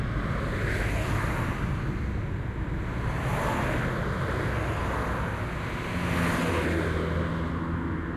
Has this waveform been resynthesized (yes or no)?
no